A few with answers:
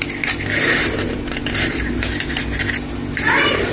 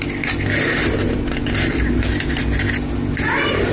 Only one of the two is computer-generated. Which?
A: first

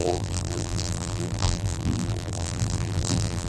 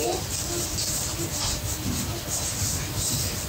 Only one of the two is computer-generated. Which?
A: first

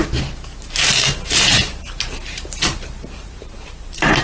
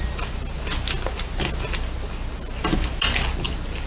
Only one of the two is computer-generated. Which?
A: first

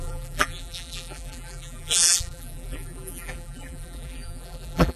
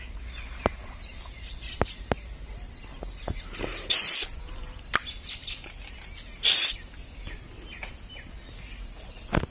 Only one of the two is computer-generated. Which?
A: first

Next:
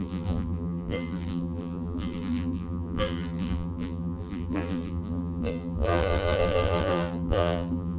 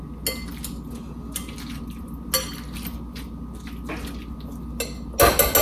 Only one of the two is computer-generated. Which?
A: first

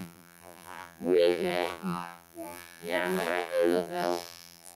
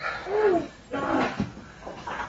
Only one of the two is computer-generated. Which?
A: first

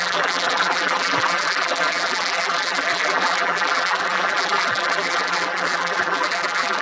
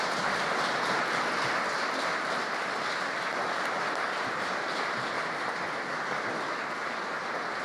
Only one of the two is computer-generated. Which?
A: first